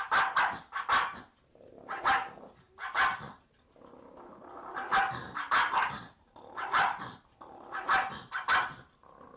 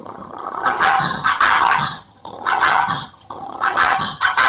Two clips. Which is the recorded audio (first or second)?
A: first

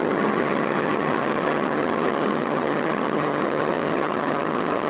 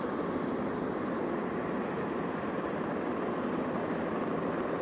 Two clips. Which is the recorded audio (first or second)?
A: second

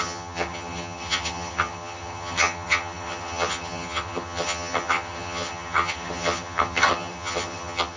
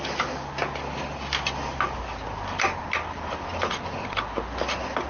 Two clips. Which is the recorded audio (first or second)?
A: second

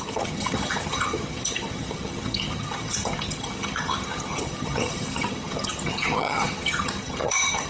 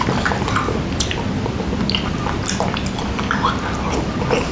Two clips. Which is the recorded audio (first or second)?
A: second